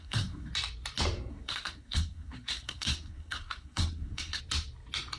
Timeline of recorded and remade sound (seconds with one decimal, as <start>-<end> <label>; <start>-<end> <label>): 0.0-0.5 remade; 0.5-1.3 recorded; 1.3-4.4 remade; 4.4-5.2 recorded